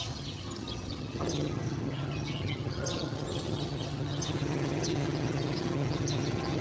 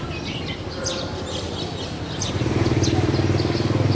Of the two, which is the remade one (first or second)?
first